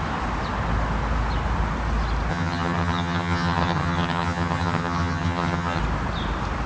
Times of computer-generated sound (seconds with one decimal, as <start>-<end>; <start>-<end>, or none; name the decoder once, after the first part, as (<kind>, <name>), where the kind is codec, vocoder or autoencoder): 2.3-5.8 (vocoder, HiFi-GAN)